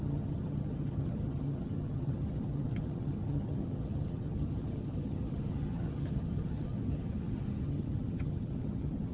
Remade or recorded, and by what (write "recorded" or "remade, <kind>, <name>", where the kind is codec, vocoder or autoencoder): remade, vocoder, HiFi-GAN